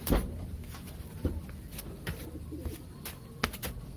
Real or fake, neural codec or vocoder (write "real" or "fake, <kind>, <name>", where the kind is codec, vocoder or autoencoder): real